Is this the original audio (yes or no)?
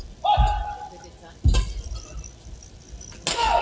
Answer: yes